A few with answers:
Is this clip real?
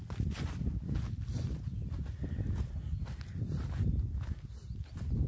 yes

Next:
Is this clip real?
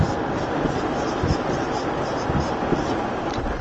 yes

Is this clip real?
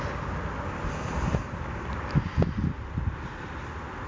yes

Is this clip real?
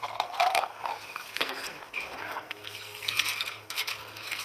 no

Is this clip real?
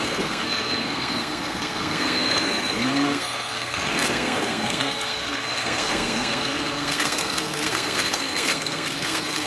no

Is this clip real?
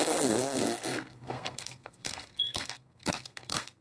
no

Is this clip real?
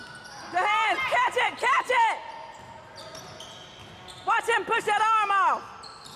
yes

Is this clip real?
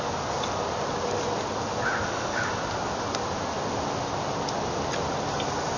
yes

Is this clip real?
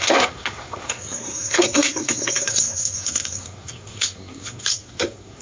no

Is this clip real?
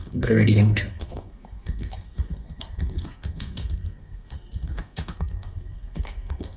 no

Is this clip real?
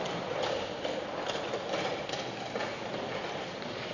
yes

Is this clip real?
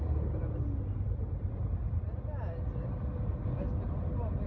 yes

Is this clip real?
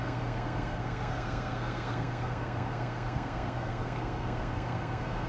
no